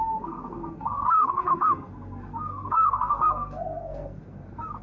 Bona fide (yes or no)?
no